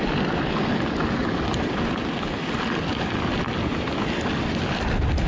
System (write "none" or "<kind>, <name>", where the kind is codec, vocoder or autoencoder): none